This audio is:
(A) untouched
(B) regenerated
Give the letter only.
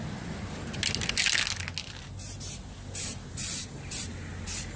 A